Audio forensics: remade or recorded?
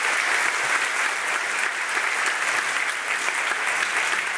recorded